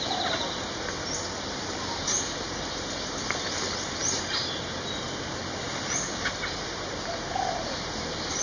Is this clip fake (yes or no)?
no